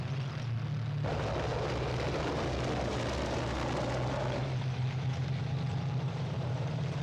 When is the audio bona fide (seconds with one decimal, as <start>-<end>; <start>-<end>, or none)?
0.0-4.4